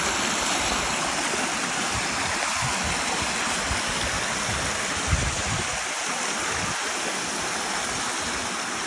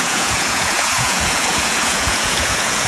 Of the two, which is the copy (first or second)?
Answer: second